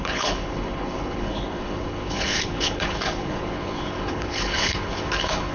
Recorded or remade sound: remade